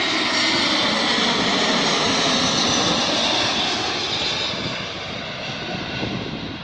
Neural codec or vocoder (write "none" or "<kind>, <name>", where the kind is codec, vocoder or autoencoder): none